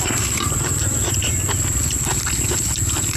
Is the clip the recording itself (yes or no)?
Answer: yes